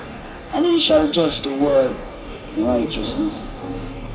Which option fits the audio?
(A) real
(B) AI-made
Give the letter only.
B